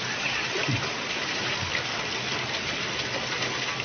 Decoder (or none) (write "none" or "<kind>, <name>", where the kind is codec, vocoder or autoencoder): none